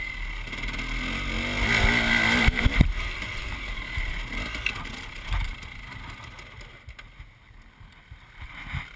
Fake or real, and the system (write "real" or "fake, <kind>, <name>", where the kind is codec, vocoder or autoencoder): real